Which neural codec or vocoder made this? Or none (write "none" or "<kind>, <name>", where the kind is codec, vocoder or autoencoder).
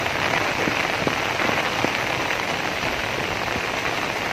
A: vocoder, BigVGAN v2